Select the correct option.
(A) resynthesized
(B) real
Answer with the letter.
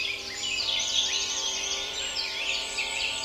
A